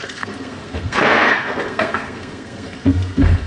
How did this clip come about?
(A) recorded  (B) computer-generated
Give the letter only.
B